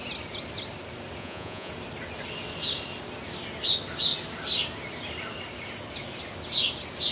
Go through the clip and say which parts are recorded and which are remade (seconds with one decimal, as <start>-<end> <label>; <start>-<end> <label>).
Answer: 0.0-1.2 recorded; 1.2-1.7 remade; 1.7-7.1 recorded